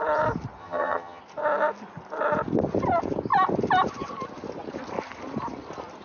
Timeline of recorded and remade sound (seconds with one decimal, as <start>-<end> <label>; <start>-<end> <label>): 0.0-0.6 recorded; 0.6-1.2 remade; 1.2-6.0 recorded